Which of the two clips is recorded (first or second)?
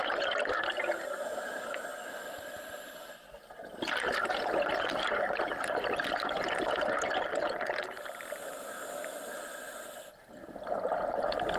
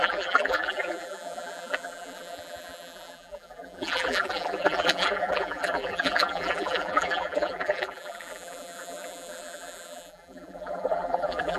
first